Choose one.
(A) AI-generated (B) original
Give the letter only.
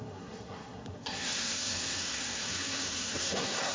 A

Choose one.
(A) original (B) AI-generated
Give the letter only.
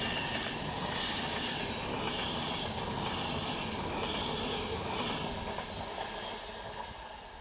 A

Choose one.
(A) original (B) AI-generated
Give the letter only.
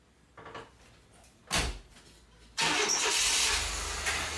A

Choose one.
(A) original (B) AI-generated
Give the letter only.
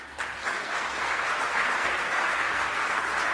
B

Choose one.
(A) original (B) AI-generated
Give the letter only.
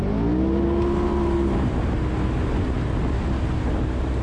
A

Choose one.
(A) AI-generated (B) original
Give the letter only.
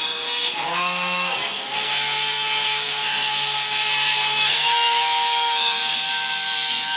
A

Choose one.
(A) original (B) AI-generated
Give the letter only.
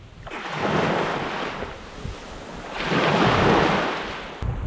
A